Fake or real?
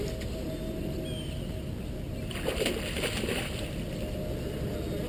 real